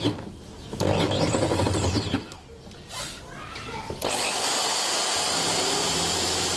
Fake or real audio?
real